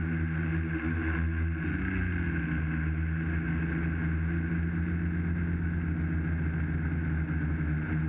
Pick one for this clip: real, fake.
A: real